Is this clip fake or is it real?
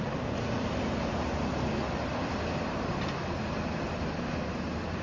real